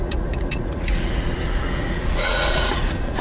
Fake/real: fake